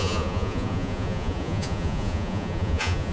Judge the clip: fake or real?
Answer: fake